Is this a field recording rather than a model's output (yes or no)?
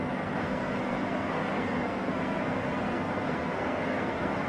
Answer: no